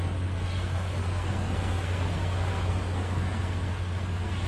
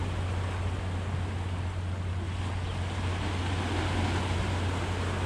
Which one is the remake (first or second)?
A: first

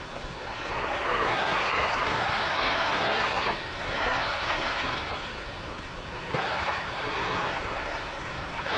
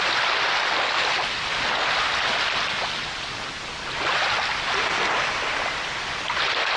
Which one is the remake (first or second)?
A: first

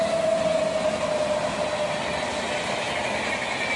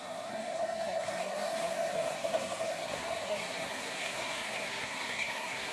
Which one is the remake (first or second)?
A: second